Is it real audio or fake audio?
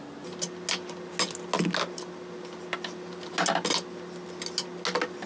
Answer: real